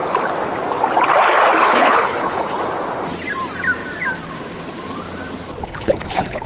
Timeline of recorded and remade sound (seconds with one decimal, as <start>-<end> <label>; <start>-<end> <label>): 0.0-1.6 recorded; 1.6-2.6 remade; 2.6-5.6 recorded; 5.6-6.5 remade